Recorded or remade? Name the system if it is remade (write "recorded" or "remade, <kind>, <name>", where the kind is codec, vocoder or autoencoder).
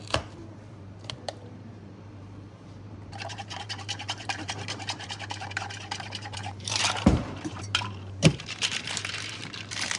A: remade, vocoder, BigVGAN v2